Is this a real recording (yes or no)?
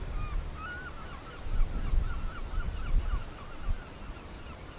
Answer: yes